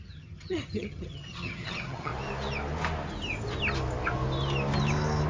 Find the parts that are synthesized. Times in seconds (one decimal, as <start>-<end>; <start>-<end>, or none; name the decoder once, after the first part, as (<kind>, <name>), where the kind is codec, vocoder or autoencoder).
0.0-2.1 (vocoder, HiFi-GAN)